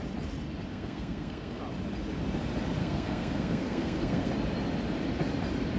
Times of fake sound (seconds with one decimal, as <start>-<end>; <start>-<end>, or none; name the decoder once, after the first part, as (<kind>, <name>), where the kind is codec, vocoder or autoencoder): 0.7-1.6 (codec, SNAC); 2.8-4.3